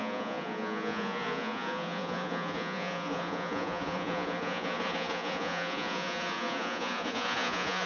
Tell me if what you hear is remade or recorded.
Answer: remade